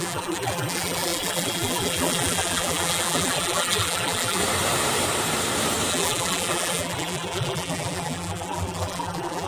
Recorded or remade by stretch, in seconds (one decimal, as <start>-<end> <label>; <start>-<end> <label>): 0.0-4.4 remade; 4.4-5.9 recorded; 5.9-9.5 remade